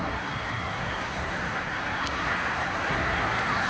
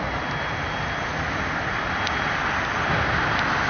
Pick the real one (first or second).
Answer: second